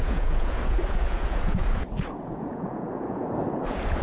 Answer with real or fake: fake